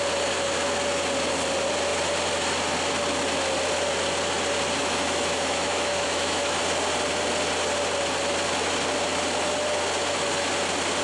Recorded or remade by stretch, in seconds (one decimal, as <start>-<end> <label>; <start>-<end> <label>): 0.0-4.8 recorded; 4.8-6.6 remade; 6.6-11.0 recorded